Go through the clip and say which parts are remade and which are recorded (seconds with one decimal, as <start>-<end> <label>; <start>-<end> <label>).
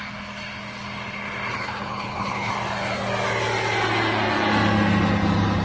0.0-1.5 recorded; 1.5-2.5 remade; 2.5-5.6 recorded